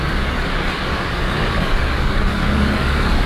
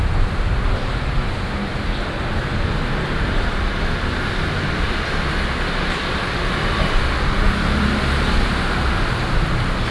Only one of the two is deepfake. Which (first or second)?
first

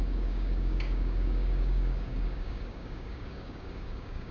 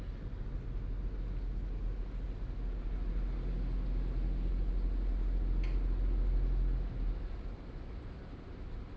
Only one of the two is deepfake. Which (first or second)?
first